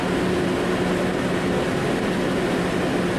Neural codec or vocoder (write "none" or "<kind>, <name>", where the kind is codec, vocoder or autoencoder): none